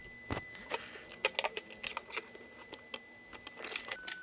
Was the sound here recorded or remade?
recorded